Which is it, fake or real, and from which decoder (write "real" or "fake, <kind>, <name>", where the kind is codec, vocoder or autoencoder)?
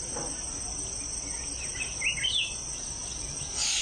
real